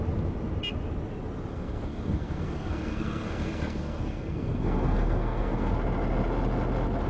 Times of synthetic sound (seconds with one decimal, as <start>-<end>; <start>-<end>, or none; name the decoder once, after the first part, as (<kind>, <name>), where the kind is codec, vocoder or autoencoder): 1.5-5.7 (codec, SNAC)